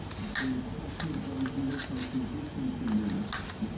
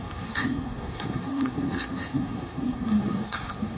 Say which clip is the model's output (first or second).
second